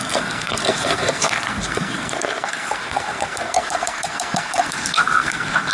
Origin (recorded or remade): remade